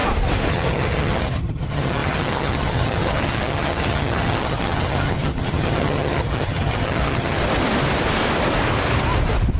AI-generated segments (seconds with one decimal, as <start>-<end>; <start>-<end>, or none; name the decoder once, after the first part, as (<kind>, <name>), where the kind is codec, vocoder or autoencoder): 0.5-7.4 (vocoder, HiFi-GAN)